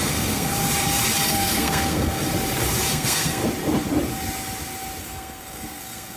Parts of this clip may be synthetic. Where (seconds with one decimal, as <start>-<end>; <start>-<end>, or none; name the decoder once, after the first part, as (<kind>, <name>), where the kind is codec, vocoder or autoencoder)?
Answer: 0.0-0.5 (codec, SNAC); 1.3-2.2; 2.9-3.4; 5.0-6.2